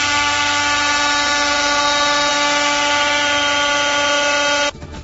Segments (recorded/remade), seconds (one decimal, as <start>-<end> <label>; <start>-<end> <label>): 0.0-5.0 recorded